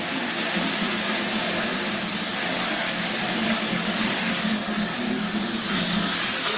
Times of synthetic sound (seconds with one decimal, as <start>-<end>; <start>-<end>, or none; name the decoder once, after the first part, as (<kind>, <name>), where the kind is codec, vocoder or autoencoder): 2.3-6.6 (codec, DAC)